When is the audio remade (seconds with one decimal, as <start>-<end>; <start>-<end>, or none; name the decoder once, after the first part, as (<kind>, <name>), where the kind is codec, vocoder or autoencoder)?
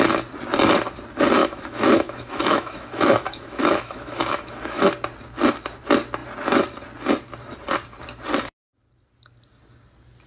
1.4-4.8 (autoencoder, DAC-VAE)